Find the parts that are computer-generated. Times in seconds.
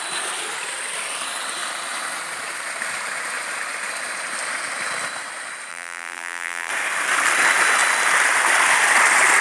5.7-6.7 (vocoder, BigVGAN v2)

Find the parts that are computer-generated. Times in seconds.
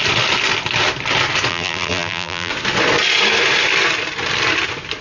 1.5-2.5 (vocoder, BigVGAN v2)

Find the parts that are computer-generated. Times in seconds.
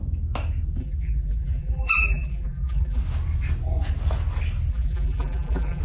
0.8-3.0 (vocoder, BigVGAN v2); 4.7-5.8